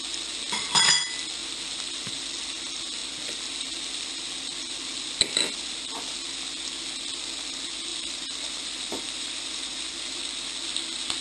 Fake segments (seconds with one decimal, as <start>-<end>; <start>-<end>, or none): 7.9-10.2